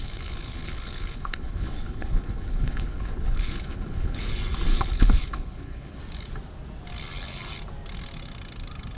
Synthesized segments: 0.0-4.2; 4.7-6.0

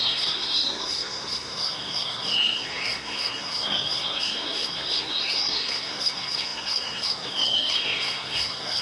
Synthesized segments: 0.0-8.8

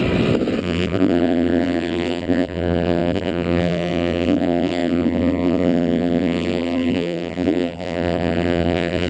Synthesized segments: 0.6-9.1

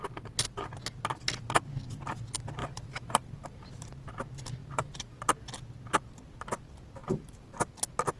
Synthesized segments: 2.6-3.9; 4.6-5.2; 7.0-7.7

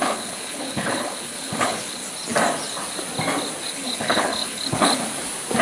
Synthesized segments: 0.0-2.0; 3.7-5.0